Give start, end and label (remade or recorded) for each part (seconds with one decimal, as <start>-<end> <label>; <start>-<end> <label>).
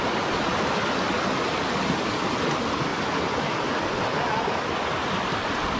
0.0-5.8 recorded